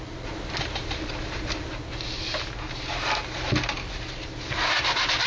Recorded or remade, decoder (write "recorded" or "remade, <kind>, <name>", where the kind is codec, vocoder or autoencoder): recorded